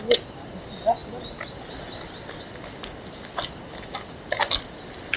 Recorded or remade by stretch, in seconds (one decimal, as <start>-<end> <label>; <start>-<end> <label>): 0.0-5.2 recorded